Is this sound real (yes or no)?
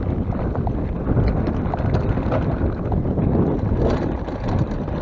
yes